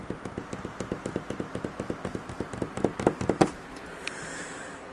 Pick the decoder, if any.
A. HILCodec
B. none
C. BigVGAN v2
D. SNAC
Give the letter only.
B